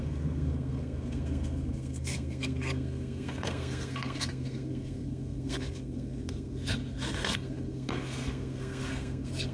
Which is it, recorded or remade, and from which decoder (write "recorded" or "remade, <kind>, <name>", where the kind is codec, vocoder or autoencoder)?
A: remade, codec, SNAC